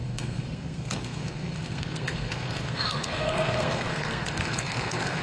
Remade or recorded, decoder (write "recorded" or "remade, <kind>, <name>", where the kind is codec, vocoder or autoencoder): remade, codec, SNAC